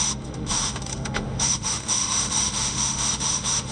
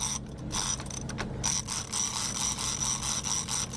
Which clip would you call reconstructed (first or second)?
first